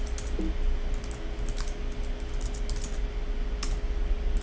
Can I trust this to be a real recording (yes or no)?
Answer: yes